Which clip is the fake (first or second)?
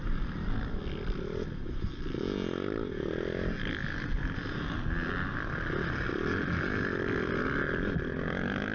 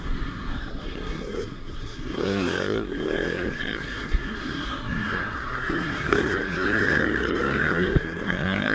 second